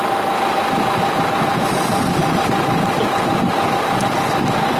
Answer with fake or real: real